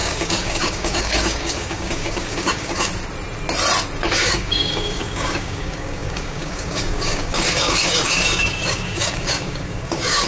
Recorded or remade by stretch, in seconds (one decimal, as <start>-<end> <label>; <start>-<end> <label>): 0.0-2.9 remade; 2.9-4.1 recorded; 4.1-10.3 remade